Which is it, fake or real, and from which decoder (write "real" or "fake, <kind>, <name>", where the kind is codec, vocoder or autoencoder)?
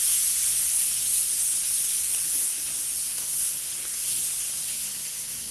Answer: fake, codec, SNAC